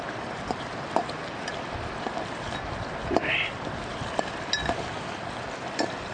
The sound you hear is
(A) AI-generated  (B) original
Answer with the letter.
B